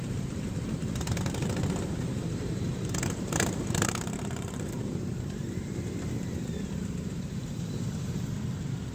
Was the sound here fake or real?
fake